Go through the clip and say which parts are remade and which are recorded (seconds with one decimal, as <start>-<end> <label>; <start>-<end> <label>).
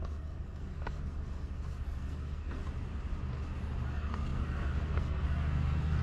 0.0-2.6 remade; 2.6-3.9 recorded; 3.9-6.0 remade